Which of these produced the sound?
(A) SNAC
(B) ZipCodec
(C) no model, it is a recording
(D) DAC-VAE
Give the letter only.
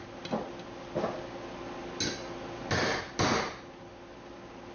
C